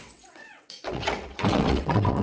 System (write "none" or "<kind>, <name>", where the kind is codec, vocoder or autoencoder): vocoder, WaveNeXt